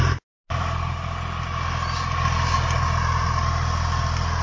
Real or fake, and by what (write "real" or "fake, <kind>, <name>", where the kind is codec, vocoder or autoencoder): real